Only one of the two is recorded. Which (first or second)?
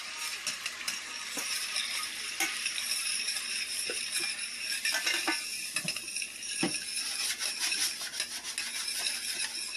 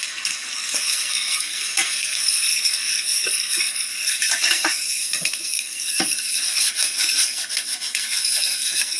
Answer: first